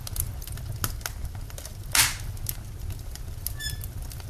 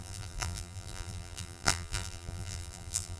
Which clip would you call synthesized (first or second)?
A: second